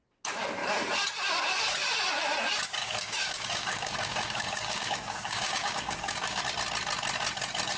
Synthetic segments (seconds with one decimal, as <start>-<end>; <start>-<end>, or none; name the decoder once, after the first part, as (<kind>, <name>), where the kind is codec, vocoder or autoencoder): 2.8-6.4 (codec, DAC)